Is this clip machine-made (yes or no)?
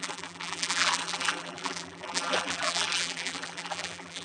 yes